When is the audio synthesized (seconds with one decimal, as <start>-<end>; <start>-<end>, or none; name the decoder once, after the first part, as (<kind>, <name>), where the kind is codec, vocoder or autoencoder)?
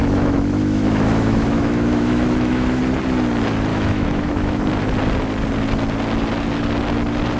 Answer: 0.0-2.8 (autoencoder, DAC-VAE); 3.7-4.6